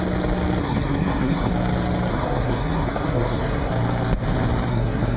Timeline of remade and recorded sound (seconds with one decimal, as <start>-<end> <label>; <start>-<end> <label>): 0.0-0.6 recorded; 0.6-1.5 remade; 1.5-2.1 recorded; 2.1-3.7 remade; 3.7-4.7 recorded; 4.7-5.2 remade